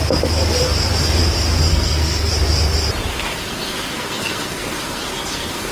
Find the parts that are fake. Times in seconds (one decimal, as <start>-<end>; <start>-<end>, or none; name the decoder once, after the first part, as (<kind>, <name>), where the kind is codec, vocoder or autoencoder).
1.7-2.3 (codec, SNAC); 3.1-5.7